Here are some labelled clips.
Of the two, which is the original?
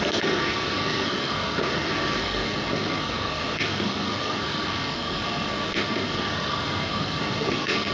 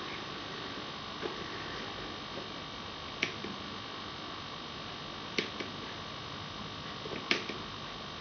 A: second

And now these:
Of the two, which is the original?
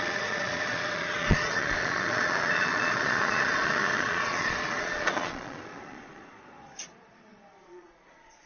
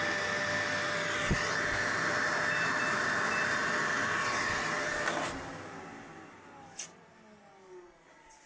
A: second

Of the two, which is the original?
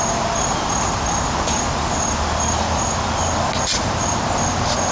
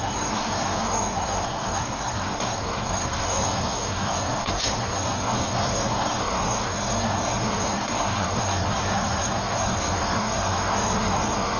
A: first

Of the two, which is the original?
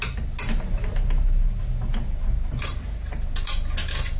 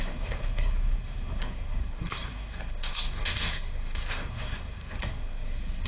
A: first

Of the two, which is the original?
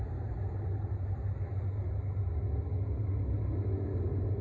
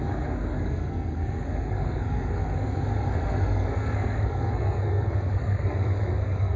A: first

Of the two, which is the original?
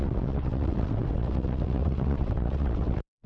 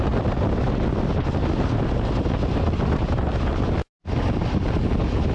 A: second